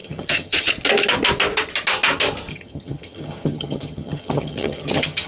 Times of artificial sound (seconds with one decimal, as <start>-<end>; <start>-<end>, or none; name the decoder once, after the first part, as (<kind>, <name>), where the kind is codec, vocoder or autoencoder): 0.0-0.7 (vocoder, HiFi-GAN); 2.5-5.3